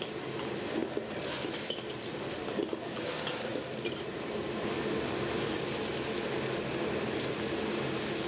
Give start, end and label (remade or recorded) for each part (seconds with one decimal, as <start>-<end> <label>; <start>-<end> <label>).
0.0-8.3 recorded